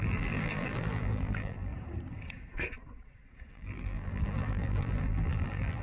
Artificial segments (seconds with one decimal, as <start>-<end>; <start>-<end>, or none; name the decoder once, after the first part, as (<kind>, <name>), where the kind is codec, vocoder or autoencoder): 0.0-1.7 (vocoder, BigVGAN v2); 3.5-5.8